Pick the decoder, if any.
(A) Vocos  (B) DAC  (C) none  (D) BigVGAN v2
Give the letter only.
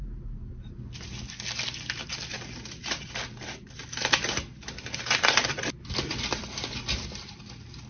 C